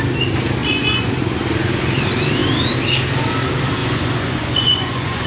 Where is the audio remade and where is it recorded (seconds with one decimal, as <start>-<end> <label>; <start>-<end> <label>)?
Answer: 0.0-0.6 recorded; 0.6-1.1 remade; 1.1-3.8 recorded; 3.8-5.3 remade